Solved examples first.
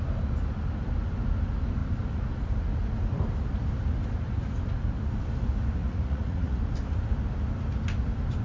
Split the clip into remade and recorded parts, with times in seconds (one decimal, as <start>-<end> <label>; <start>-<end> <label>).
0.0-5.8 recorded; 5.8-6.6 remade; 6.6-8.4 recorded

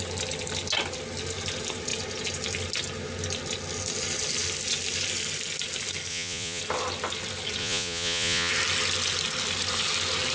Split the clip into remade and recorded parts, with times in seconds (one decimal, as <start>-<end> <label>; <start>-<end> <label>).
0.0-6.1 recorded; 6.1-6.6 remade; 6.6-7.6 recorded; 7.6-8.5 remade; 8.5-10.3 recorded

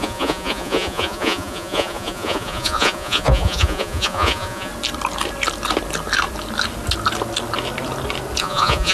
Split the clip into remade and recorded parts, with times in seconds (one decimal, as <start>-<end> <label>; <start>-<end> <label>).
0.0-4.7 remade; 4.7-8.4 recorded; 8.4-8.9 remade

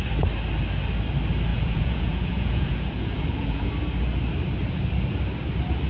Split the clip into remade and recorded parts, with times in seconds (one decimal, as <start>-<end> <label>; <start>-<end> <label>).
0.0-1.5 recorded; 1.5-3.7 remade; 3.7-5.9 recorded

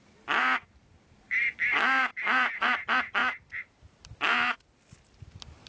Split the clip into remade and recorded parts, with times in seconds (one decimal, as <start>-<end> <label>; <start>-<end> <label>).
0.0-5.7 recorded

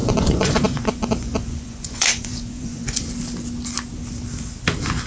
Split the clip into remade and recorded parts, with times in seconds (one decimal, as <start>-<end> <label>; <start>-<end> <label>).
0.0-3.1 remade; 3.1-5.1 recorded